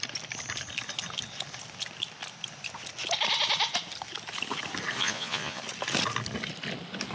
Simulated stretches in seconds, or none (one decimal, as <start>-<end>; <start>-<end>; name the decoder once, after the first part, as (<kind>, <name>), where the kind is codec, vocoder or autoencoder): 5.0-5.6 (vocoder, Vocos)